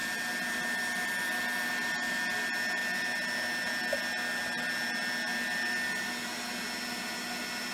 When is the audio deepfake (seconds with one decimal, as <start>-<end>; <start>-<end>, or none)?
none